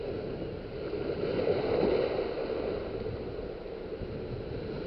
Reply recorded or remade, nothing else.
recorded